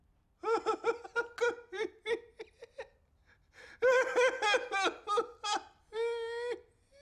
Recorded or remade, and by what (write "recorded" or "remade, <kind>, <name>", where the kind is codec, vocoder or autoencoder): recorded